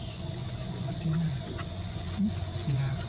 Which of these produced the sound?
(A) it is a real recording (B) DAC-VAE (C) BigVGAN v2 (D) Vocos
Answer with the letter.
D